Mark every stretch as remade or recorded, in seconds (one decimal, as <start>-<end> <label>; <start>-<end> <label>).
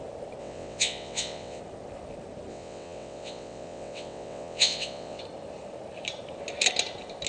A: 0.0-0.4 recorded; 0.4-1.6 remade; 1.6-2.5 recorded; 2.5-5.2 remade; 5.2-7.3 recorded